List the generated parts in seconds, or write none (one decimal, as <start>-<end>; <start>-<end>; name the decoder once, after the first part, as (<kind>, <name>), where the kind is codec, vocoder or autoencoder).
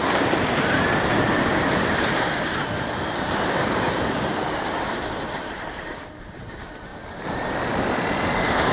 1.1-5.2 (vocoder, BigVGAN v2); 6.9-8.7